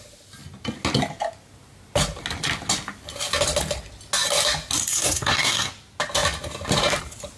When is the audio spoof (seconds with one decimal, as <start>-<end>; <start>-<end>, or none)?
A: 4.9-5.7